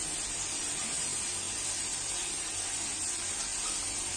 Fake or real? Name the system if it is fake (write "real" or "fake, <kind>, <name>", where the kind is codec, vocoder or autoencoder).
real